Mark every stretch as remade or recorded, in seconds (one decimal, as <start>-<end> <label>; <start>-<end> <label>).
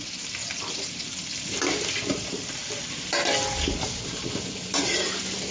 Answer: 0.0-5.5 recorded